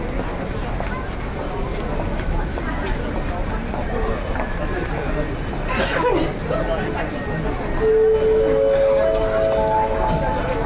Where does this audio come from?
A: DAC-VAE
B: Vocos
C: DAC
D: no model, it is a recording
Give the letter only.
D